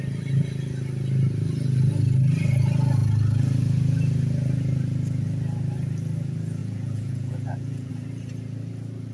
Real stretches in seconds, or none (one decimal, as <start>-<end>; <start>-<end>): 0.0-6.6; 7.9-9.1